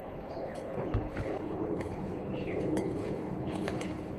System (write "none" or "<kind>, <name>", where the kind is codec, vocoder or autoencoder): codec, HILCodec